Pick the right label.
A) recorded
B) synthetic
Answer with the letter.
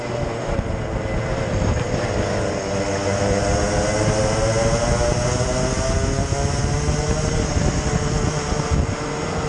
A